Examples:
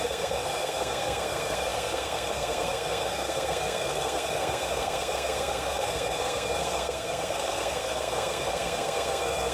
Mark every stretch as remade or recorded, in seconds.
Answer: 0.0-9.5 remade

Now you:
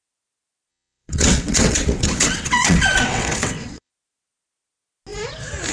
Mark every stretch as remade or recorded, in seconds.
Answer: 0.0-0.7 recorded; 0.7-3.9 remade; 3.9-5.7 recorded

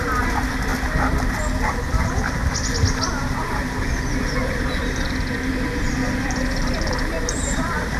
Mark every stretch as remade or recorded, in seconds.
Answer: 0.0-0.7 remade; 0.7-5.5 recorded; 5.5-8.0 remade

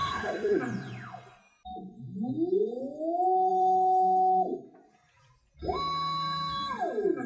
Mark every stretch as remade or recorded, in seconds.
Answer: 0.0-0.6 remade; 0.6-7.3 recorded

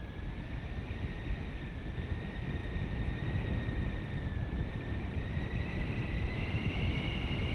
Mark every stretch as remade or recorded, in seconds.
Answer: 0.0-2.6 recorded; 2.6-6.9 remade; 6.9-7.5 recorded

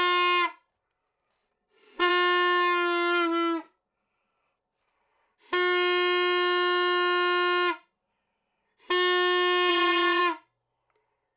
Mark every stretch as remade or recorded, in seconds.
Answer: 0.0-1.4 recorded; 1.4-2.1 remade; 2.1-9.7 recorded; 9.7-10.2 remade; 10.2-11.4 recorded

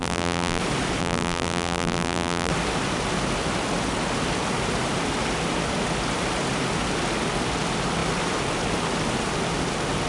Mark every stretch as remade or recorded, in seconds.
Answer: 0.0-0.6 remade; 0.6-1.0 recorded; 1.0-2.5 remade; 2.5-10.1 recorded

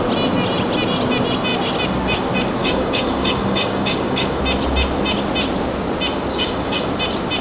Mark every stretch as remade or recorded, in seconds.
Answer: 0.0-2.6 recorded; 2.6-4.4 remade; 4.4-6.3 recorded; 6.3-6.9 remade; 6.9-7.4 recorded